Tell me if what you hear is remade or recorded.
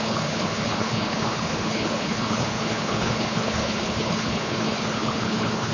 remade